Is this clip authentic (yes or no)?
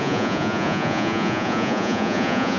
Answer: no